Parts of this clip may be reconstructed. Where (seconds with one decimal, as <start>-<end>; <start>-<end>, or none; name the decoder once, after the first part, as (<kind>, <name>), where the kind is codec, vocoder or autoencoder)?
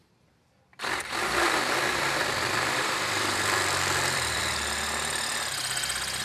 0.7-4.4 (vocoder, BigVGAN v2)